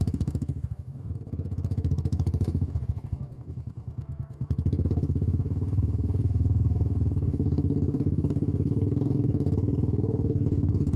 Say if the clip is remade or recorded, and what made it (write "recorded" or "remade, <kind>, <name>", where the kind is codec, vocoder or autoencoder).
remade, codec, DAC